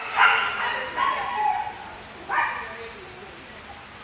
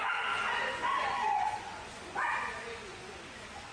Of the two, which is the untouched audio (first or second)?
first